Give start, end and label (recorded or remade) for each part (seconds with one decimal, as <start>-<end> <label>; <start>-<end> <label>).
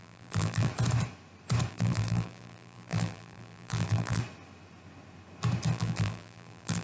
0.0-0.7 remade; 0.7-1.7 recorded; 1.7-4.2 remade; 4.2-5.7 recorded; 5.7-6.8 remade